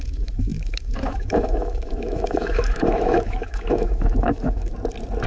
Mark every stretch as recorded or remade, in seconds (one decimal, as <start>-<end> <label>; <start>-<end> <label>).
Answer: 0.0-4.7 remade; 4.7-5.3 recorded